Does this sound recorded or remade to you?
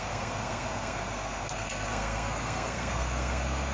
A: remade